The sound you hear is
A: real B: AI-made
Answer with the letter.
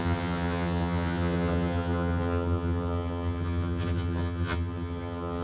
B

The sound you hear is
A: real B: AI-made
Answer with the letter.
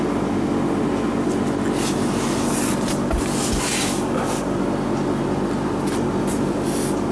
A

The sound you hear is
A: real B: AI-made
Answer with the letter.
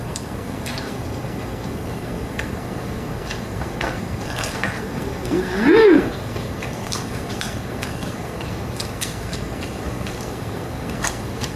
B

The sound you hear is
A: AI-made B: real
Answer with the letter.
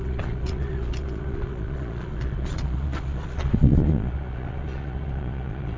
A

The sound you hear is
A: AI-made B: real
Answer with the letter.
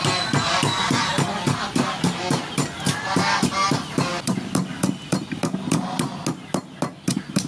B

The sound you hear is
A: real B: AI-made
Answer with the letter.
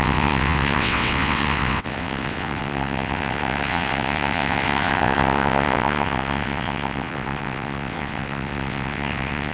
B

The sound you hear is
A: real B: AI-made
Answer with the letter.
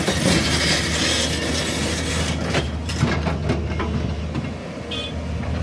A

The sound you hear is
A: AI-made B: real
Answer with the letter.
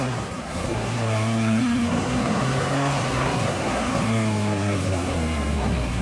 A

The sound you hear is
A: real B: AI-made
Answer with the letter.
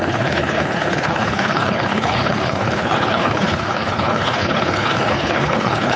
B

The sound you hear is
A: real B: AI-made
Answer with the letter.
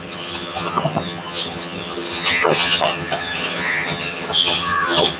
B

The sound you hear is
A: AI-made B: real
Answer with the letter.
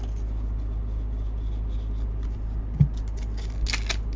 B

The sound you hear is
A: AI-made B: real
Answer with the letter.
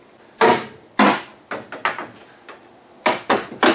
B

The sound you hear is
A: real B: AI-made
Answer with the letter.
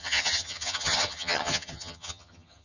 B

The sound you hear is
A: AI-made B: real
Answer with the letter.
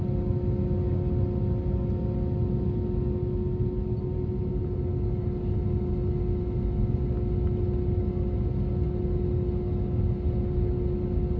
B